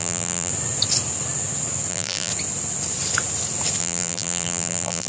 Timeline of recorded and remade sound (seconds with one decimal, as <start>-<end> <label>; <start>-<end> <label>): 0.0-0.5 remade; 0.5-1.9 recorded; 1.9-2.3 remade; 2.3-3.8 recorded; 3.8-5.1 remade